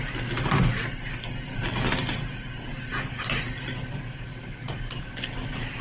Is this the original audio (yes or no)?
yes